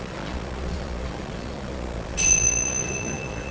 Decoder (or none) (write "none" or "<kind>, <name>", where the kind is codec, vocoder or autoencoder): vocoder, Vocos